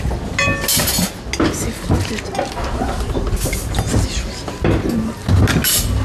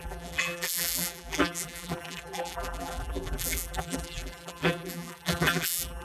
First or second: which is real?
first